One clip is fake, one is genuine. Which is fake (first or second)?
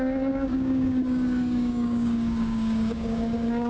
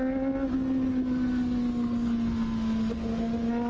first